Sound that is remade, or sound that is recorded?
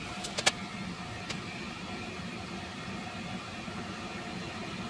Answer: recorded